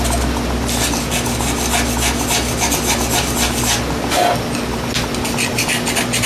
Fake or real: real